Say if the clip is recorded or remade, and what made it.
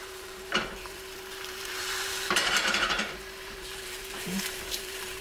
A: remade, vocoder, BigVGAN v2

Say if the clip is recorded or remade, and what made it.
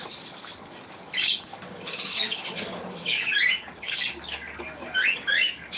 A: remade, codec, DAC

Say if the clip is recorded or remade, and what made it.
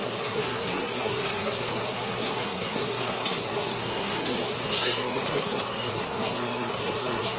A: remade, codec, SNAC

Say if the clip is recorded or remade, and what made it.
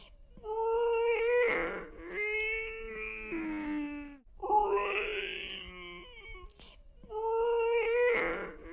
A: recorded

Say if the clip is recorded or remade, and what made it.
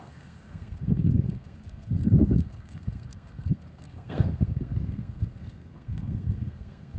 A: remade, codec, SNAC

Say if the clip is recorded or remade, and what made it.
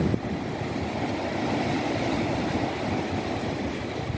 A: recorded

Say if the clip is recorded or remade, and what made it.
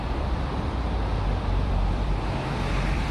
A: remade, vocoder, BigVGAN v2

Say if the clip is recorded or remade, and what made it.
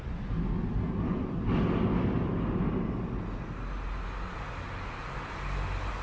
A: recorded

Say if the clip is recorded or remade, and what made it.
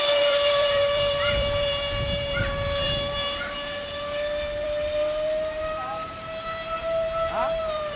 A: remade, vocoder, BigVGAN v2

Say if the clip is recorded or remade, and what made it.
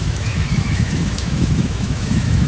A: remade, autoencoder, DAC-VAE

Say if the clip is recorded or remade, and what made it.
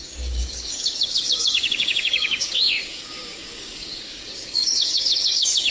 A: remade, codec, DAC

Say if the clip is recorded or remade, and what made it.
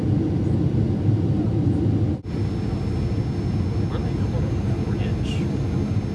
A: recorded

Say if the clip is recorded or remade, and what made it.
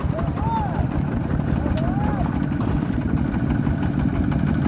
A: recorded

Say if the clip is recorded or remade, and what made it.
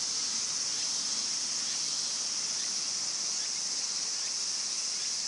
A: recorded